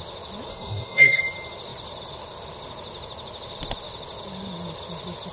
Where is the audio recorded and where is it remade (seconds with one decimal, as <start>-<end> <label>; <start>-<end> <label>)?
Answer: 0.0-0.5 recorded; 0.5-1.2 remade; 1.2-5.3 recorded